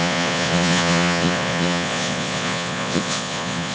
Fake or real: fake